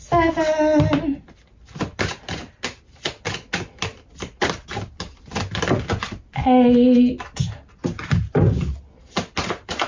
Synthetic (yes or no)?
no